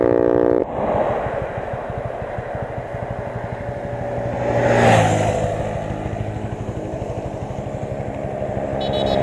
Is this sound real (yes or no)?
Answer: yes